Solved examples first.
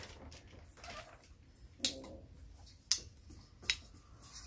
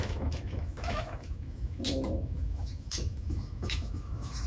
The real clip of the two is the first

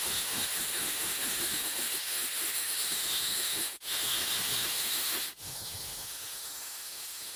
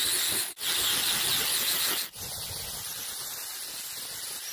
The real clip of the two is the second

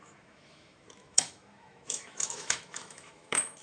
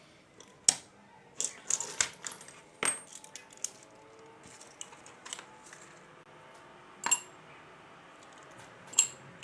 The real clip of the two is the second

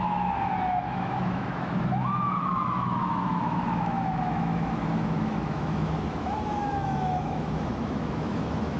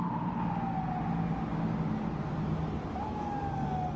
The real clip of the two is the second